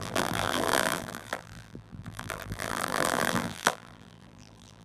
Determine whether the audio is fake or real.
fake